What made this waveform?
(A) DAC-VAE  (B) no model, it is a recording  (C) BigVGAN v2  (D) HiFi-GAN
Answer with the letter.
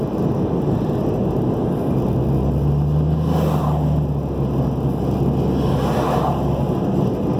B